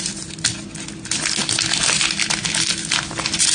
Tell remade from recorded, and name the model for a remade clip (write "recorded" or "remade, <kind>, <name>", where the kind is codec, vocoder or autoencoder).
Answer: recorded